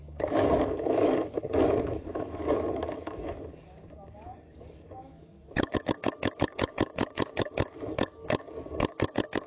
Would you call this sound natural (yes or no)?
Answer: no